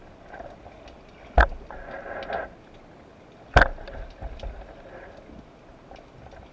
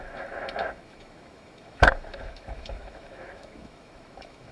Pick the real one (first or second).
first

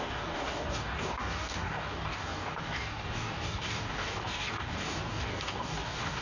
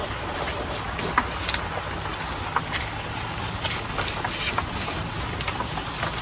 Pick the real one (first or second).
second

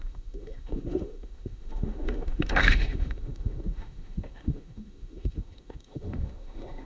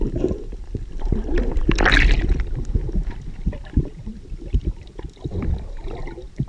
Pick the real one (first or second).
second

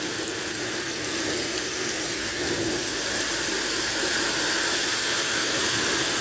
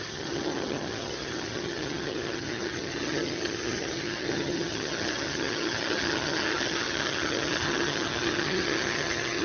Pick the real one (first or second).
first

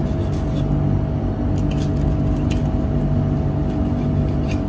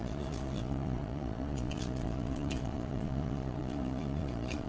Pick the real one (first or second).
first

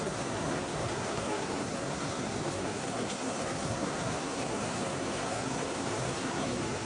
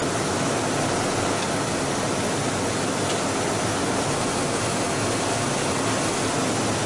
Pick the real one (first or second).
second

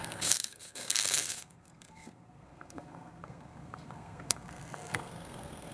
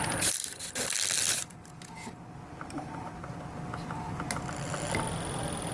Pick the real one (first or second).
second